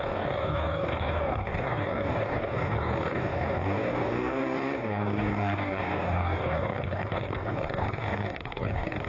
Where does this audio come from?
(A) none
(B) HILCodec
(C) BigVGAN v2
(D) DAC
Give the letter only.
D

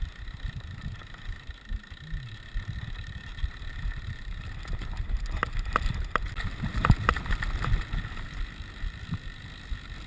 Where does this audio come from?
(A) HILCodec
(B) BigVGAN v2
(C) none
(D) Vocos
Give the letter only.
C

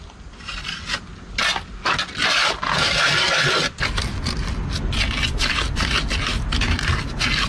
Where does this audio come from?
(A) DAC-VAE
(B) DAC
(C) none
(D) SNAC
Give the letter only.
C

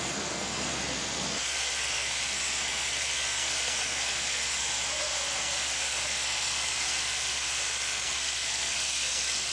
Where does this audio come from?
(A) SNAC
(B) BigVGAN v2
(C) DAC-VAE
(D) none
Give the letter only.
A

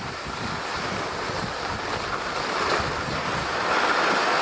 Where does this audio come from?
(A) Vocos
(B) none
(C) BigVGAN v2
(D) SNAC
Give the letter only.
B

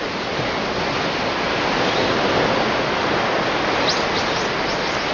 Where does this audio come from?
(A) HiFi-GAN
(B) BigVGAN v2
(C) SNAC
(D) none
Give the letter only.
D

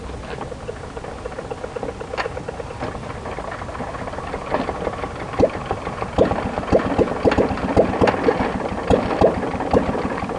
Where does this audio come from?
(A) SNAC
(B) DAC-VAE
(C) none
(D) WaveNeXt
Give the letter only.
C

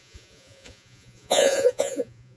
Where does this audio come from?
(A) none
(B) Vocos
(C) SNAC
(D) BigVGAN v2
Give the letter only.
B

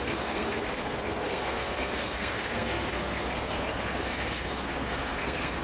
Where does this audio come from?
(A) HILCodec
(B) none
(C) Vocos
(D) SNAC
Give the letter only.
D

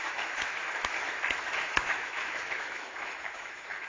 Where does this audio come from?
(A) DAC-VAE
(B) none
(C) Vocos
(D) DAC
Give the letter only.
A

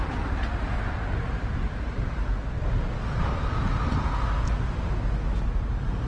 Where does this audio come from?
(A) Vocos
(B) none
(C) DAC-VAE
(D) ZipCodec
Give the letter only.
B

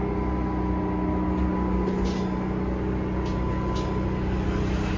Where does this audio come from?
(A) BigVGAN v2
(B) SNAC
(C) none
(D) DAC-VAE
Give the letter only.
C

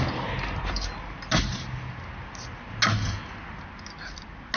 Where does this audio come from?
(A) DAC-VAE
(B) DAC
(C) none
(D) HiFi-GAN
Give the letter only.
C